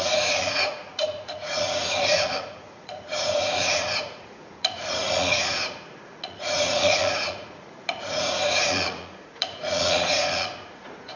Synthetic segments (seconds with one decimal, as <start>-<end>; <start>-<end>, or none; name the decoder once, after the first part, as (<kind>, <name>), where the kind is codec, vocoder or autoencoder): 0.0-11.2 (vocoder, Vocos)